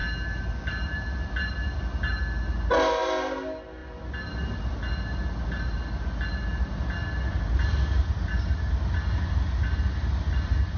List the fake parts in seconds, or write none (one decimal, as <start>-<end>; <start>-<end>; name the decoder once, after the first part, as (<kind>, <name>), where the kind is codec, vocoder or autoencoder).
none